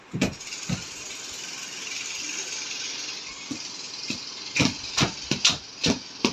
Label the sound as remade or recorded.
recorded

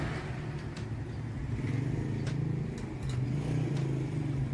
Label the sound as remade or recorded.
recorded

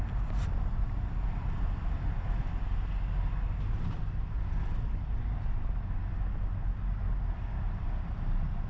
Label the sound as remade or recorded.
recorded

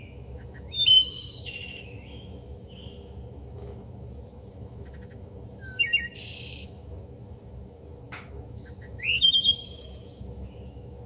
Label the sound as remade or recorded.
remade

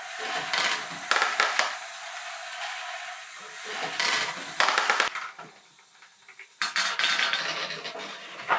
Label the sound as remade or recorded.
recorded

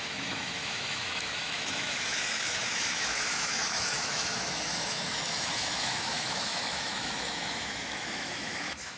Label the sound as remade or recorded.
remade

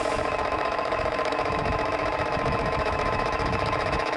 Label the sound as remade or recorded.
remade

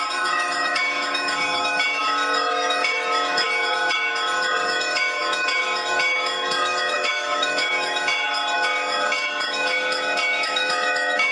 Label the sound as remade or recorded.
remade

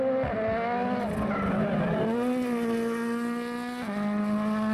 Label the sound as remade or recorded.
recorded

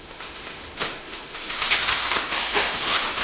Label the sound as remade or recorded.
remade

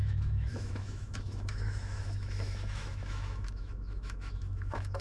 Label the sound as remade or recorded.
remade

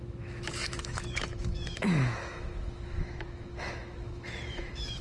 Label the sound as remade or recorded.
remade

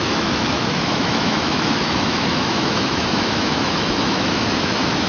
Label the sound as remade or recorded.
remade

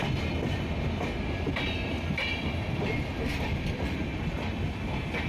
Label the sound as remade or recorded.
recorded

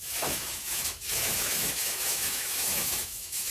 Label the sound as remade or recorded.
remade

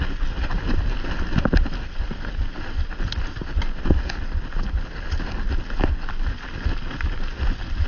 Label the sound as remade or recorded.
recorded